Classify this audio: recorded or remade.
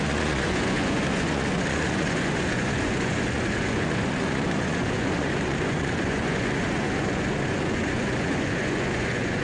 remade